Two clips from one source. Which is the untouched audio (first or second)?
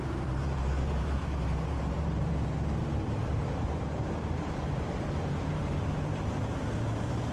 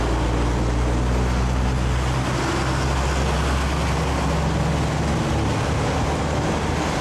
second